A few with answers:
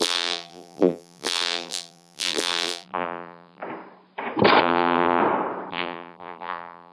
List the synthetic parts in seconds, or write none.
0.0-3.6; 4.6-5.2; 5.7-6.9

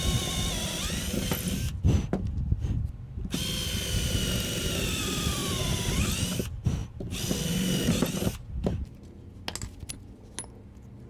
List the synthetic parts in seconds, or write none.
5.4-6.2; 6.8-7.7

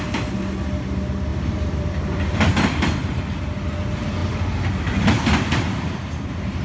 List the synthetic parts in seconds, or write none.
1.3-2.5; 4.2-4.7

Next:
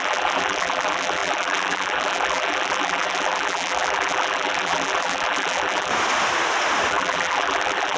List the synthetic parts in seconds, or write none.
0.0-5.9; 6.9-8.0

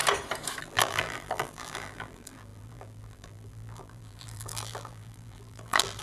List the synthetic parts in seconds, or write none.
0.6-6.0

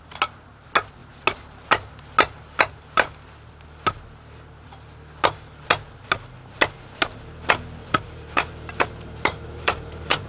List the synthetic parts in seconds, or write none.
7.8-10.3

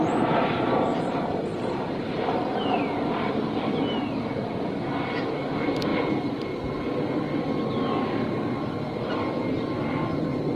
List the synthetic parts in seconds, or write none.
0.9-2.8

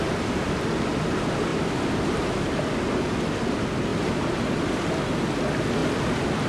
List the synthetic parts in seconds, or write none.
1.5-2.7; 3.9-4.9